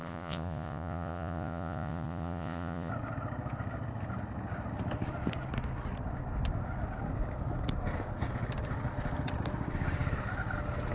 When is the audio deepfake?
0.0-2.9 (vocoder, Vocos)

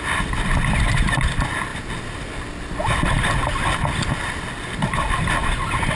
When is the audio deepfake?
none

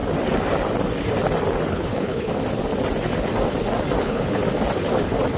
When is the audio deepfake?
1.7-2.3 (codec, HILCodec); 4.0-4.4

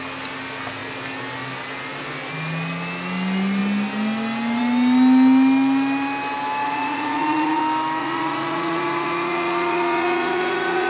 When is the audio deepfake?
6.6-7.6 (vocoder, Vocos); 8.0-10.9

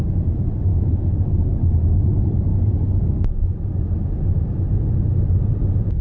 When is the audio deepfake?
0.7-1.6 (codec, DAC)

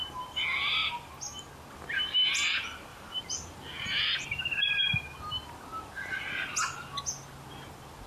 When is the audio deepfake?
2.9-3.6 (vocoder, BigVGAN v2); 5.7-6.4